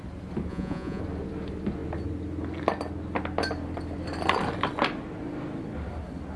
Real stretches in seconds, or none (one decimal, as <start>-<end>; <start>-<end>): 0.0-0.5; 1.0-6.4